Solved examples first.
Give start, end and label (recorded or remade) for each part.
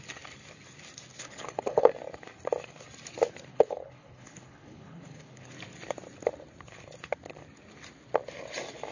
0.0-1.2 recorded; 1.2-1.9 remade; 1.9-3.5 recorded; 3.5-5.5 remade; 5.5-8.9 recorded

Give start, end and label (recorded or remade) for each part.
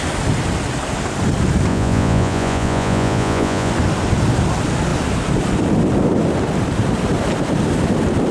0.0-1.7 recorded; 1.7-3.7 remade; 3.7-8.3 recorded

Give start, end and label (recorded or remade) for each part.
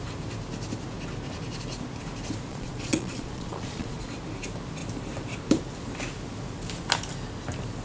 0.0-2.5 recorded; 2.5-4.1 remade; 4.1-7.8 recorded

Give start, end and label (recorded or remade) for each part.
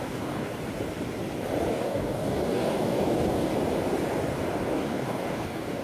0.0-0.5 remade; 0.5-1.7 recorded; 1.7-3.5 remade; 3.5-4.7 recorded; 4.7-5.8 remade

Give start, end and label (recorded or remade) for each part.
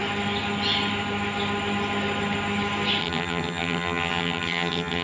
0.0-3.0 recorded; 3.0-5.0 remade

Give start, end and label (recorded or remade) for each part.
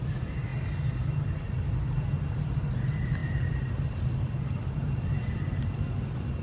0.0-6.4 recorded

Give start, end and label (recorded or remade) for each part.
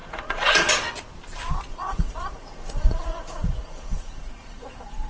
0.0-0.7 remade; 0.7-1.7 recorded; 1.7-5.1 remade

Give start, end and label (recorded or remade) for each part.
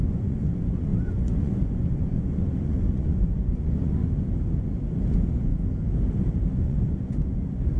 0.0-4.0 remade; 4.0-5.1 recorded; 5.1-5.5 remade; 5.5-6.5 recorded; 6.5-7.8 remade